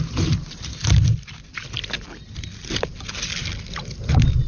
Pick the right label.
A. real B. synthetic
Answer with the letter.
A